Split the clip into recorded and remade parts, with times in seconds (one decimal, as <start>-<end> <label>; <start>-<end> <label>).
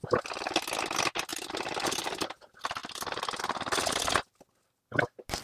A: 0.0-1.3 recorded; 1.3-2.1 remade; 2.1-2.8 recorded; 2.8-3.4 remade; 3.4-5.4 recorded